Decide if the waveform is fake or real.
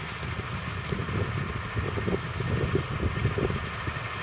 real